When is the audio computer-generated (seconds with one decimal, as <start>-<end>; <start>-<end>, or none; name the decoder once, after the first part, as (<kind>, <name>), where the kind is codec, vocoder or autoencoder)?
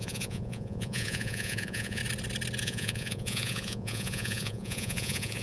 0.0-2.0 (vocoder, Vocos); 2.6-5.4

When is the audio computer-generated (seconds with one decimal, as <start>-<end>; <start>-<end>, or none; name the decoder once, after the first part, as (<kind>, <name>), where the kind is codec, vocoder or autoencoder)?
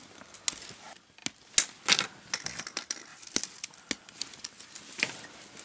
none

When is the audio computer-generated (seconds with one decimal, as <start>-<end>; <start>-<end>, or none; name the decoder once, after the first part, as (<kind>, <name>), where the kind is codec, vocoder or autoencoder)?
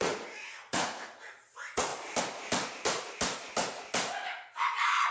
0.0-1.9 (vocoder, Vocos)